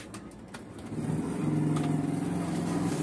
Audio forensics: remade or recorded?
recorded